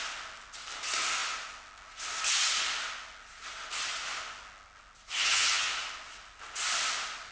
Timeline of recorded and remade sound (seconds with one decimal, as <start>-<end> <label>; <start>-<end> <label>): 0.0-5.1 recorded; 5.1-5.7 remade; 5.7-7.3 recorded